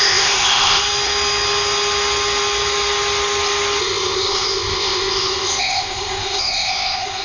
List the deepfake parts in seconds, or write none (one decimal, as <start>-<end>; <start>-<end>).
0.0-0.8; 3.8-7.2